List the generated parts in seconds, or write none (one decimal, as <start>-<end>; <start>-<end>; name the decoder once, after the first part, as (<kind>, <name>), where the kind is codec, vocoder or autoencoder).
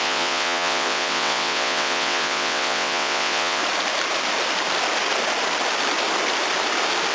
0.0-3.6 (vocoder, WaveNeXt)